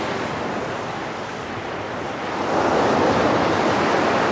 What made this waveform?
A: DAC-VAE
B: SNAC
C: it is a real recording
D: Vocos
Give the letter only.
C